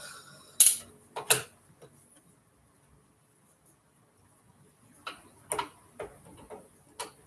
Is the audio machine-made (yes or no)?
no